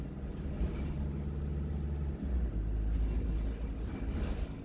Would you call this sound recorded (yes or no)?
yes